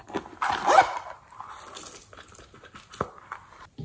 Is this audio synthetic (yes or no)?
no